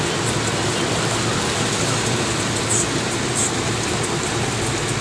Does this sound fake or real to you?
real